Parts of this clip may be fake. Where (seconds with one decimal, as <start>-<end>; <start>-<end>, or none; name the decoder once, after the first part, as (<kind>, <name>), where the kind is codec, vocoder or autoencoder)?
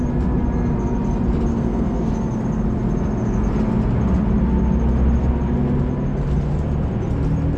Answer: 1.5-2.1 (codec, SNAC)